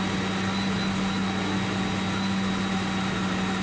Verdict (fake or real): real